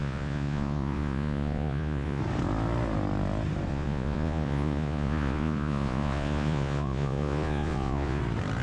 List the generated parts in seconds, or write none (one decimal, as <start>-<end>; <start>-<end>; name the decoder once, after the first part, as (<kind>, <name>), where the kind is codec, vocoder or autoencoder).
0.0-2.2 (vocoder, Vocos); 3.7-8.2